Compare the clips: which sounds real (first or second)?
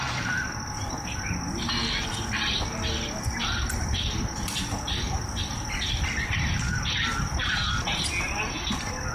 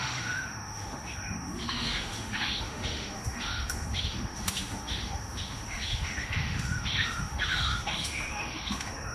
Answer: first